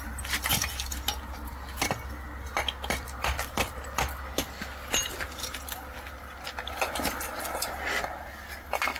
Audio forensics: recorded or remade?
recorded